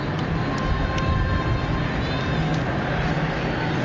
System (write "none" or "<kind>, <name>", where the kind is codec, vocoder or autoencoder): none